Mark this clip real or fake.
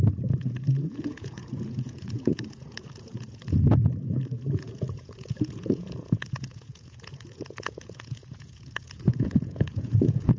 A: fake